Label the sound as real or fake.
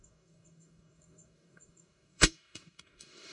fake